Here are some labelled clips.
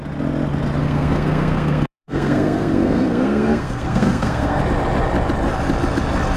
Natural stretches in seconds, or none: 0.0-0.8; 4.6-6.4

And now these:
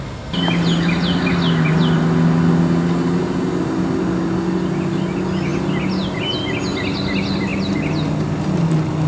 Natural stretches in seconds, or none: 0.0-9.1

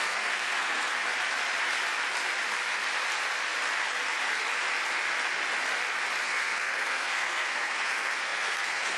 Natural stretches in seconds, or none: 0.9-6.2

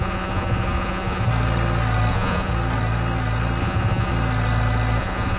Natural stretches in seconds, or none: 1.3-2.1; 2.5-3.6; 4.1-5.0

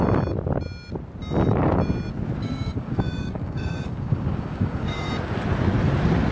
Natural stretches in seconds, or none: 0.0-2.4; 5.1-6.3

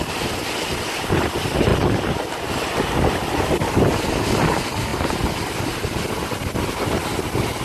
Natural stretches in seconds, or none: 0.0-4.9; 6.0-7.6

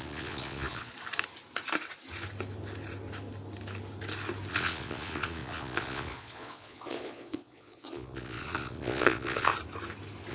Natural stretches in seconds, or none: 0.9-4.5; 9.5-10.3